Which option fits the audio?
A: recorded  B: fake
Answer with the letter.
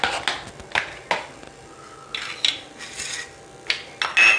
A